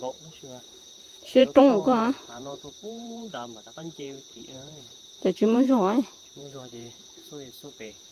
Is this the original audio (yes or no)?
no